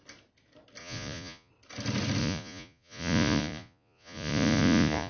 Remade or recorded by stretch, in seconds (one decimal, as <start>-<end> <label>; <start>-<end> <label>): 0.0-0.8 recorded; 0.8-1.5 remade; 1.5-2.2 recorded; 2.2-5.1 remade